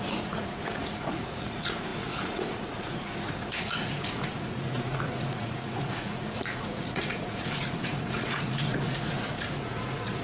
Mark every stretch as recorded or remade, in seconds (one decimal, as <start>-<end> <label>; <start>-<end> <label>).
0.0-10.2 remade